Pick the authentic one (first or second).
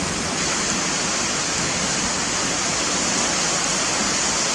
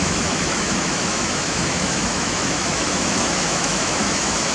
first